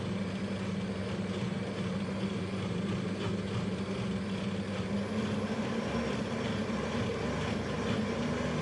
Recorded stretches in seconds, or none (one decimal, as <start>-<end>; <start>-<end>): 0.0-8.6